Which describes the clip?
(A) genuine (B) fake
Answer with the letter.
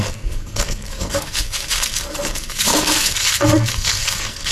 B